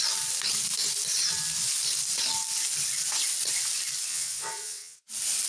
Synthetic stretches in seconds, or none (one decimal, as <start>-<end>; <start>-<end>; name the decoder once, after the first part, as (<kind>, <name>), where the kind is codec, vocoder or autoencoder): 4.1-5.1 (vocoder, WaveNeXt)